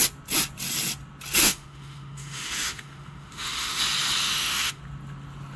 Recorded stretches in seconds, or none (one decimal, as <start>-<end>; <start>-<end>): 0.0-1.4; 3.8-4.2; 4.8-5.6